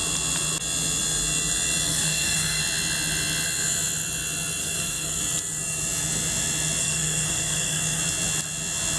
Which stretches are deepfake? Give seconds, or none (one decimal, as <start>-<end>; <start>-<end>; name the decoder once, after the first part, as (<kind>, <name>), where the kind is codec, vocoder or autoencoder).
1.9-2.6 (codec, SNAC); 4.6-5.2; 6.8-8.0